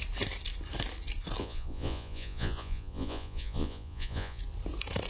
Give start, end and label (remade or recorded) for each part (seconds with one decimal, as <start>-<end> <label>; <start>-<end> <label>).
0.0-1.4 recorded; 1.4-4.4 remade; 4.4-5.1 recorded